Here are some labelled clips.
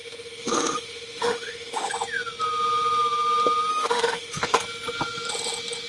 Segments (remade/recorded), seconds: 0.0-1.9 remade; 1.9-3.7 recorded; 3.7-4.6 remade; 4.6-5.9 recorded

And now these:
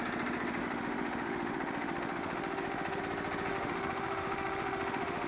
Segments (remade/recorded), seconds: 0.0-0.6 recorded; 0.6-3.0 remade; 3.0-3.5 recorded; 3.5-5.3 remade

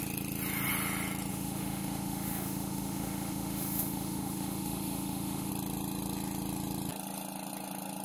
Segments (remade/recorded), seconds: 0.0-1.3 recorded; 1.3-5.5 remade; 5.5-8.0 recorded

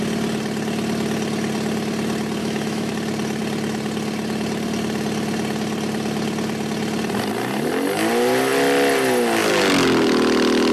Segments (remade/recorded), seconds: 0.0-2.4 recorded; 2.4-2.9 remade; 2.9-10.7 recorded

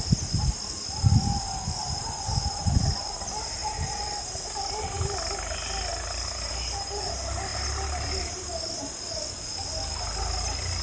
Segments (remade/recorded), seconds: 0.0-10.8 recorded